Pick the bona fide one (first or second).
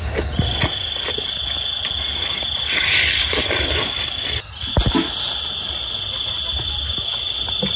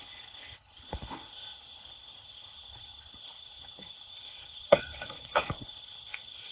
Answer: first